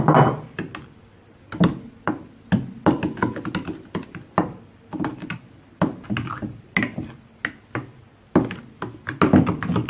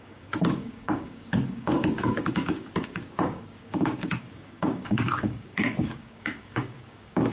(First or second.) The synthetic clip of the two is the second